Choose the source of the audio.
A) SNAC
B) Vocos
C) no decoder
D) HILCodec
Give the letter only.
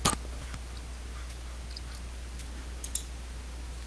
C